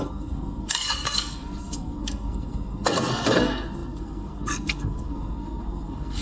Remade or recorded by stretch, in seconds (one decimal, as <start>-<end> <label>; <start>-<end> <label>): 0.0-6.2 remade